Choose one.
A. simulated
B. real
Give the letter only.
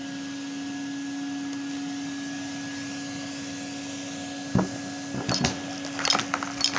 B